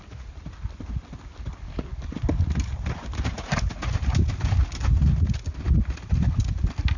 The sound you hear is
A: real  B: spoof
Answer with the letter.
A